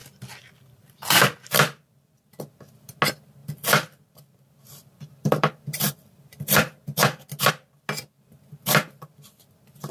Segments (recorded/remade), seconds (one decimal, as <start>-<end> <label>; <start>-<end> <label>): 0.0-3.4 recorded; 3.4-7.5 remade; 7.5-9.9 recorded